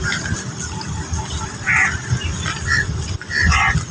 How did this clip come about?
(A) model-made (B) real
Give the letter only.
B